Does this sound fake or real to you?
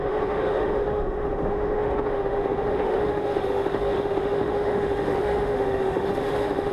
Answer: fake